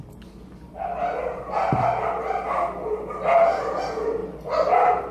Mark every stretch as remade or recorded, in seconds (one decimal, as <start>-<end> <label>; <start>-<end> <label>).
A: 0.0-2.2 recorded; 2.2-3.1 remade; 3.1-4.2 recorded; 4.2-5.1 remade